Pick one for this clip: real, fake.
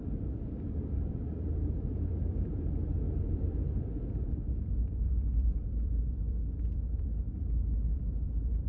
fake